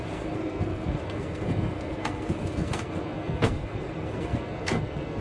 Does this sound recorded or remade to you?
remade